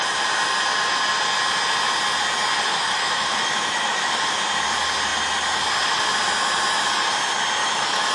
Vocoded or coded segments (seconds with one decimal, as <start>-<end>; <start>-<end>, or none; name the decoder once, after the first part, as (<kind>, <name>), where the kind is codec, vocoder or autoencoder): 2.7-4.3 (autoencoder, DAC-VAE); 7.6-8.1